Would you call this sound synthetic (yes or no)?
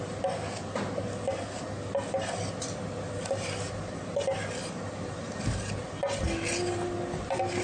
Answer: no